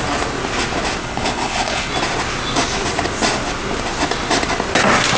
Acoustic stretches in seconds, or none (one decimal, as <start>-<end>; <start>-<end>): 0.0-1.0; 1.9-5.2

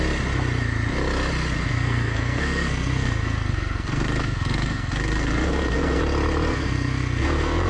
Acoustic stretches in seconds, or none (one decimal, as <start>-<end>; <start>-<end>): 0.0-1.7; 6.0-6.5

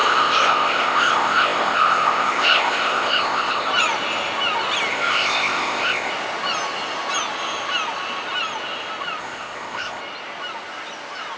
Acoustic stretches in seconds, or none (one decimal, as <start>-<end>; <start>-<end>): 3.7-4.9; 6.1-9.2; 10.0-11.4

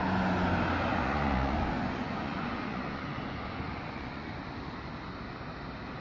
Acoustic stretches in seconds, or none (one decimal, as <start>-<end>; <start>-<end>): 0.0-0.9; 4.3-6.0

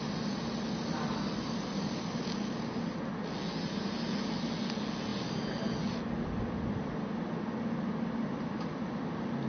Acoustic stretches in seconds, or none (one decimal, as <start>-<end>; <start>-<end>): 0.0-9.5